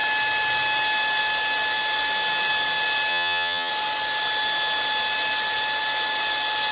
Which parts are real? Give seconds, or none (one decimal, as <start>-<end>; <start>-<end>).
0.0-3.1; 3.7-6.7